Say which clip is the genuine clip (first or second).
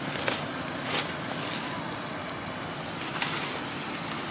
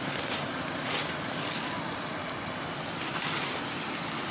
first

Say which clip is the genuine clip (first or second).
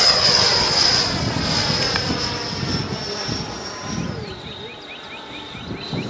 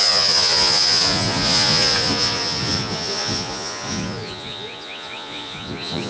first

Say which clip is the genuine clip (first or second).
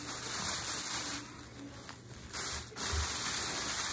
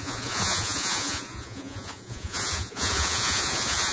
first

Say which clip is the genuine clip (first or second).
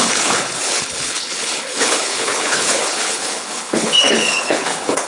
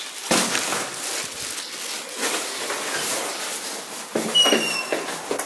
second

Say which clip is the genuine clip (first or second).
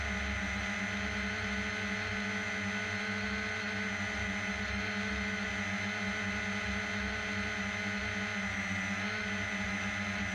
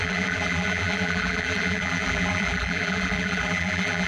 first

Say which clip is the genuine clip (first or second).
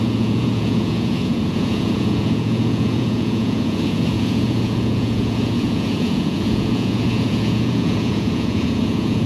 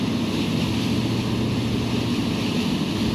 second